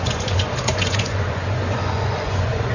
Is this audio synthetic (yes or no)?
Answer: yes